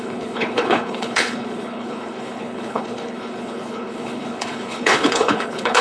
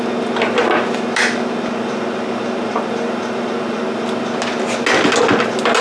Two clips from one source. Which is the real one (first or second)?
second